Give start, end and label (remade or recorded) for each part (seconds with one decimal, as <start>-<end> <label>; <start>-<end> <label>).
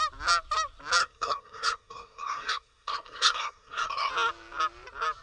0.0-1.0 recorded; 1.0-4.1 remade; 4.1-5.2 recorded